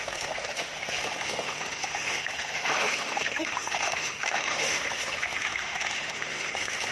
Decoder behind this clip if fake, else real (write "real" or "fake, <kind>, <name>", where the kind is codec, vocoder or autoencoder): fake, autoencoder, DAC-VAE